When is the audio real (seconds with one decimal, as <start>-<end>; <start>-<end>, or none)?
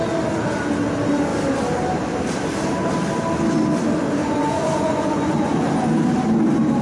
0.0-4.2; 5.9-6.8